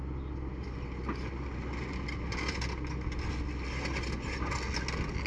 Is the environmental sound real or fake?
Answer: real